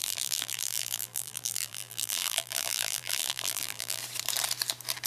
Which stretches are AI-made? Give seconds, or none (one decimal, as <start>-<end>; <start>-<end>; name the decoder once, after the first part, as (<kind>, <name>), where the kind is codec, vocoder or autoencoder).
0.0-4.0 (vocoder, BigVGAN v2)